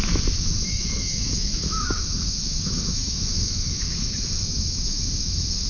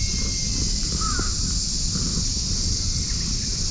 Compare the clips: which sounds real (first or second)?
second